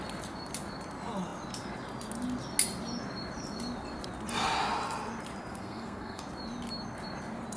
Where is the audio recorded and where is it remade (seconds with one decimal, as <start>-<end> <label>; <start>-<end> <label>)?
0.0-5.5 recorded; 5.5-6.2 remade; 6.2-7.6 recorded